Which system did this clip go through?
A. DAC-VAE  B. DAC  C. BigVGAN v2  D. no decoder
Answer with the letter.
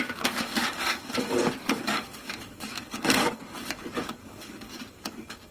B